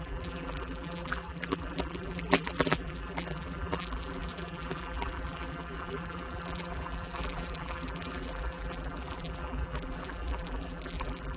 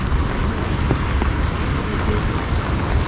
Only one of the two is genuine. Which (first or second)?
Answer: second